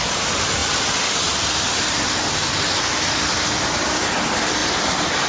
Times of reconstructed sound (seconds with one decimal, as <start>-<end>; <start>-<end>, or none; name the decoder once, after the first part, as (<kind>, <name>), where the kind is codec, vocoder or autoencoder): none